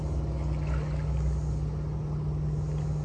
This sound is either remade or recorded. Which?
recorded